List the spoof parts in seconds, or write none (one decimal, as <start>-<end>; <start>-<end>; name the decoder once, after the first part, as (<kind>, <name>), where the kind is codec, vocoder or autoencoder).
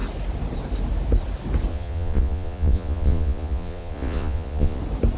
1.7-4.8 (vocoder, Vocos)